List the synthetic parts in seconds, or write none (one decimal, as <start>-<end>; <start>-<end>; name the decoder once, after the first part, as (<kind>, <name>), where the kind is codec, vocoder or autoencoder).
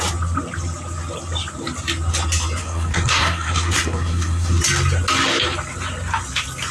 2.6-4.6 (codec, SNAC)